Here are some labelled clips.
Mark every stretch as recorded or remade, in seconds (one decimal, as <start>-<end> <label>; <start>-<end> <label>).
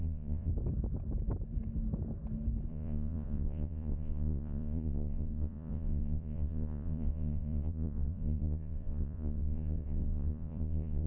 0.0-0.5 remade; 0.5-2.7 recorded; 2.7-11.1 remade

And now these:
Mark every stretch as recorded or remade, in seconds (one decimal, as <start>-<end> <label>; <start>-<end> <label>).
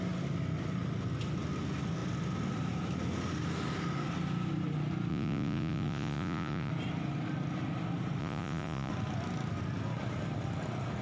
0.0-5.1 recorded; 5.1-6.7 remade; 6.7-8.2 recorded; 8.2-8.9 remade; 8.9-11.0 recorded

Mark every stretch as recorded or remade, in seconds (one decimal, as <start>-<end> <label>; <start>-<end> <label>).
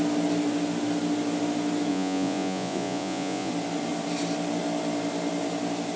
0.0-1.9 recorded; 1.9-3.5 remade; 3.5-6.0 recorded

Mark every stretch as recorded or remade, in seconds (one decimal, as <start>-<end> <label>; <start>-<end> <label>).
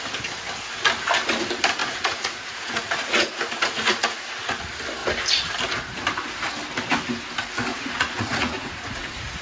0.0-1.8 recorded; 1.8-4.2 remade; 4.2-7.7 recorded; 7.7-9.4 remade